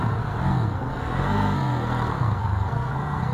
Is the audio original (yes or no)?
no